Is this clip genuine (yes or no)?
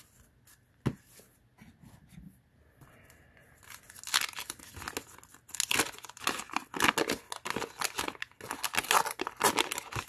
yes